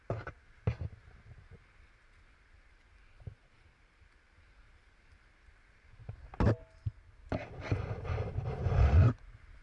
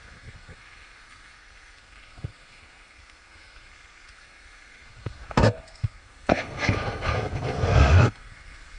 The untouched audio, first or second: first